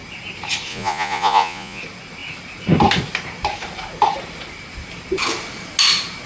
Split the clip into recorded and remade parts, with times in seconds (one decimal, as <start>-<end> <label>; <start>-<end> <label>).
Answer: 0.0-0.7 recorded; 0.7-1.8 remade; 1.8-6.3 recorded